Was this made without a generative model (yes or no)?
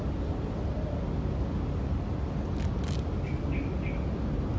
yes